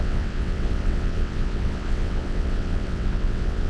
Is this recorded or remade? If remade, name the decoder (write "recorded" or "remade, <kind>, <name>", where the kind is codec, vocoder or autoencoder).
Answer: remade, vocoder, WaveNeXt